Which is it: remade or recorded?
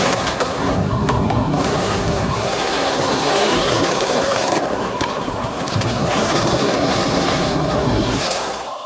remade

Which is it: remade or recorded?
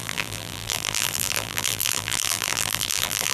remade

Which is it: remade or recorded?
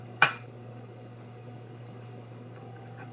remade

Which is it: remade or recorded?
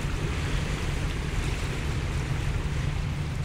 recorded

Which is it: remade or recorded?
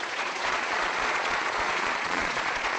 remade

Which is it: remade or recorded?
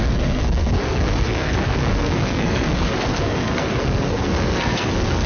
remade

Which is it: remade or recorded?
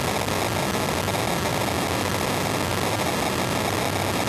recorded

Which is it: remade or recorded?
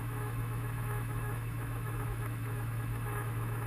remade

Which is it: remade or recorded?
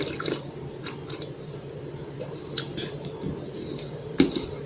remade